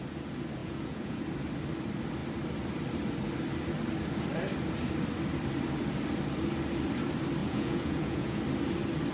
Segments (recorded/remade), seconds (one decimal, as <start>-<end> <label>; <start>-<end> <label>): 0.0-0.6 recorded; 0.6-1.2 remade; 1.2-7.4 recorded; 7.4-8.4 remade; 8.4-9.1 recorded